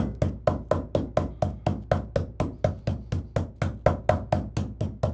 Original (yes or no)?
yes